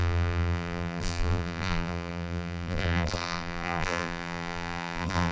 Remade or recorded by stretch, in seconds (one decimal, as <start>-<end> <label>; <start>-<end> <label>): 0.0-5.3 remade